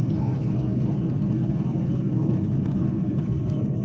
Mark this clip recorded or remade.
remade